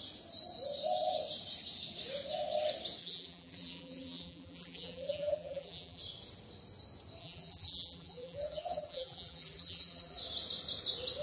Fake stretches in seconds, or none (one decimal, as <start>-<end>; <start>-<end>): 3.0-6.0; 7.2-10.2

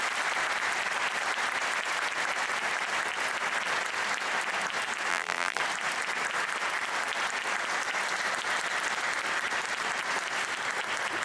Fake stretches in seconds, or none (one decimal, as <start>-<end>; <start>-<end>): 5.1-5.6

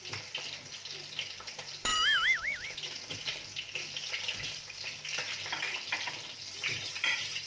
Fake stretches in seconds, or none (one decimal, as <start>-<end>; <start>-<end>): 0.0-7.5

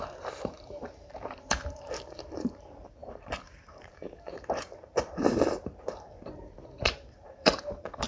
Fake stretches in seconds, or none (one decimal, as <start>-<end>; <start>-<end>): 0.0-8.1

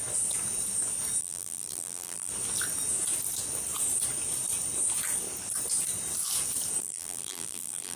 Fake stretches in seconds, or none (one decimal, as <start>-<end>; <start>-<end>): 1.2-2.3; 6.8-8.0